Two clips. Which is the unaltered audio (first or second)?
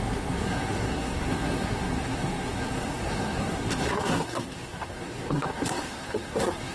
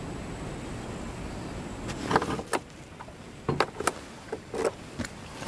second